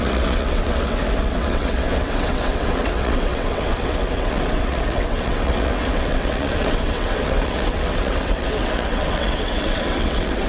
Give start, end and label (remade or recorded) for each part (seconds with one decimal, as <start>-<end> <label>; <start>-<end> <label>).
0.0-10.5 remade

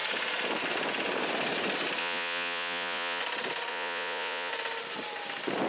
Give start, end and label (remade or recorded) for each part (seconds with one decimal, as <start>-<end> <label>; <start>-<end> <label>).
0.0-2.0 recorded; 2.0-3.2 remade; 3.2-3.7 recorded; 3.7-4.5 remade; 4.5-5.7 recorded

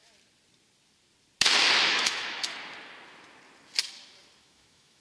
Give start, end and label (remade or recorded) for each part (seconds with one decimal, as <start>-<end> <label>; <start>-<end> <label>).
0.0-1.9 recorded; 1.9-2.5 remade; 2.5-4.4 recorded; 4.4-5.0 remade

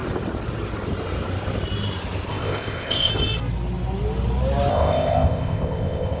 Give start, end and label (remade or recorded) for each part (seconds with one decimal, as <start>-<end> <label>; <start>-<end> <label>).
0.0-2.3 recorded; 2.3-3.1 remade; 3.1-4.7 recorded; 4.7-6.2 remade

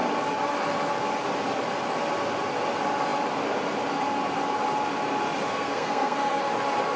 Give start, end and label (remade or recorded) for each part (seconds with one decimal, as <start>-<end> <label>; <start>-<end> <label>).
0.0-5.5 recorded; 5.5-6.4 remade; 6.4-7.0 recorded

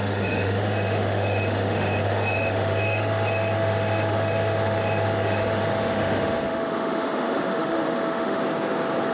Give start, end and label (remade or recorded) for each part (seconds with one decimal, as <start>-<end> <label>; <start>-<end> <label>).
0.0-8.4 remade; 8.4-9.1 recorded

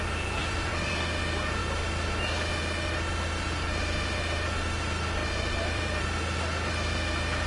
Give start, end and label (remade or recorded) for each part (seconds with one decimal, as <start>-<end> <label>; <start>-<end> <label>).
0.0-0.4 recorded; 0.4-0.9 remade; 0.9-5.2 recorded; 5.2-6.0 remade; 6.0-7.5 recorded